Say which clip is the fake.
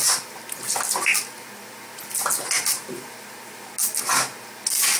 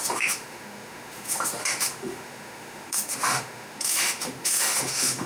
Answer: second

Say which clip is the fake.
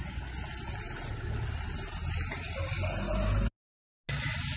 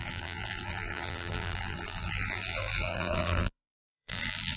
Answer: second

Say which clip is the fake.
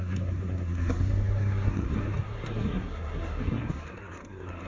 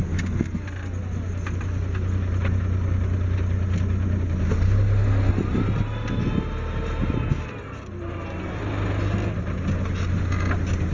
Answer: first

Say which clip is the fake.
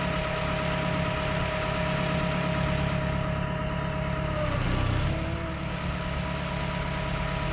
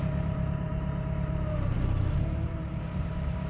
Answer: second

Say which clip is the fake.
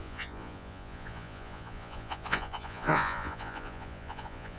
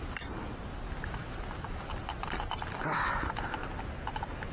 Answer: first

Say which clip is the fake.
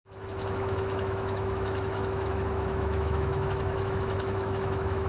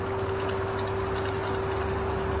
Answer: first